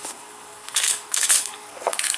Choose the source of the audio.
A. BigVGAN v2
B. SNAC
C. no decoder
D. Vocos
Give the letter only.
B